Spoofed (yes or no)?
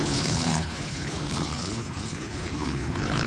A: yes